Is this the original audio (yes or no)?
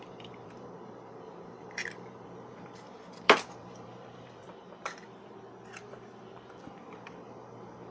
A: no